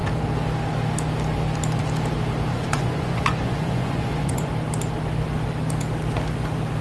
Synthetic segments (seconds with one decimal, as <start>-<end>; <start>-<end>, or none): 2.5-4.5